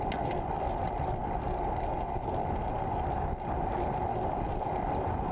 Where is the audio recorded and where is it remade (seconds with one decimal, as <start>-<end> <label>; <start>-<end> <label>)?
0.0-5.3 recorded